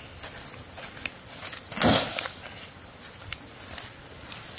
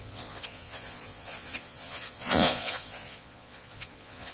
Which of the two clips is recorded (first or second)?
first